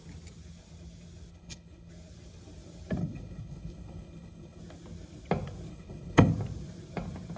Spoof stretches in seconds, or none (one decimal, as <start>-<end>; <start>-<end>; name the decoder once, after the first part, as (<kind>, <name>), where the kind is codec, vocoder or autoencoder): 1.3-1.9 (codec, HILCodec); 3.0-4.6; 5.7-6.3